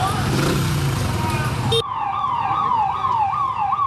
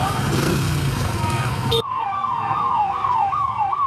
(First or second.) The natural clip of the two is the first